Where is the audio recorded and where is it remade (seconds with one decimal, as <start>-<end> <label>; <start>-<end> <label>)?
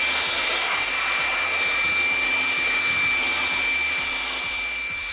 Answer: 0.0-0.5 recorded; 0.5-1.0 remade; 1.0-5.1 recorded